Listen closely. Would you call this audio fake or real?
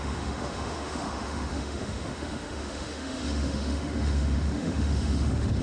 fake